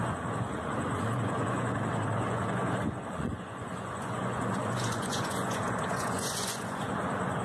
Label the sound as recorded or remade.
remade